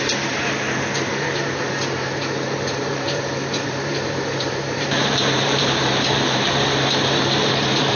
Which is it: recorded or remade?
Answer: remade